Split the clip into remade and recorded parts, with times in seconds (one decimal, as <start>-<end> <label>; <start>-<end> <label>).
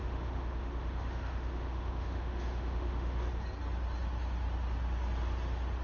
0.0-3.2 remade; 3.2-5.8 recorded